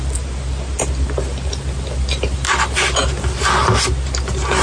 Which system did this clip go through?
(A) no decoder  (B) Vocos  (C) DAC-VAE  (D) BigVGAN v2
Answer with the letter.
A